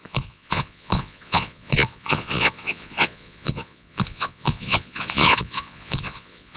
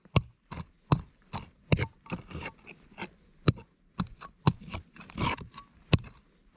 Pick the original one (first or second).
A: second